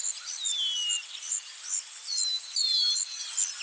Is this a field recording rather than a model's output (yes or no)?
yes